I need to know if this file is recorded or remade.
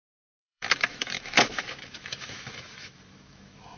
remade